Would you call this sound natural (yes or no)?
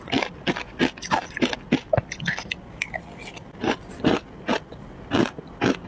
yes